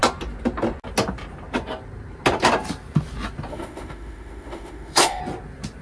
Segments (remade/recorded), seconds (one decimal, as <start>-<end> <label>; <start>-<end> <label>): 0.0-3.5 recorded; 3.5-5.2 remade; 5.2-5.8 recorded